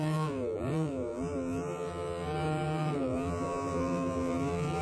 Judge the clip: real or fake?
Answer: fake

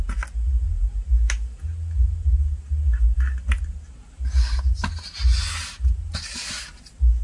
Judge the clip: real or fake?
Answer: real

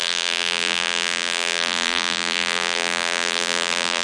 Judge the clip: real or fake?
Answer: fake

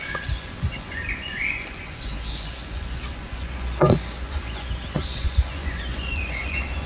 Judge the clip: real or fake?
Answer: fake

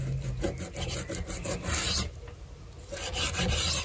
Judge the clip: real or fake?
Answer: real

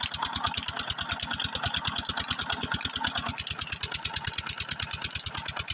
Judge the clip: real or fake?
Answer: real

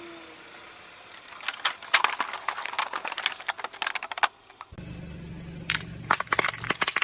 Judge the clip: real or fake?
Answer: real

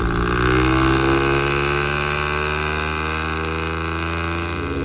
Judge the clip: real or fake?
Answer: real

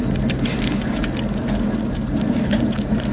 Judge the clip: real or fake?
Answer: real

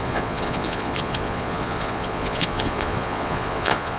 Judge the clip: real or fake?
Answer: fake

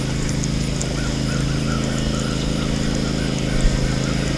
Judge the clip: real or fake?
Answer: real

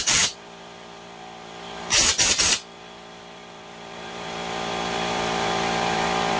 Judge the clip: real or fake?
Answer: fake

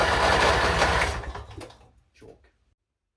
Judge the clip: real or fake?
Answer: real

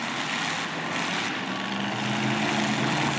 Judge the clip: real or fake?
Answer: real